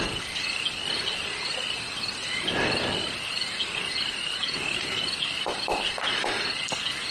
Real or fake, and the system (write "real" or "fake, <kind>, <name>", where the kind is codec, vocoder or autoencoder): real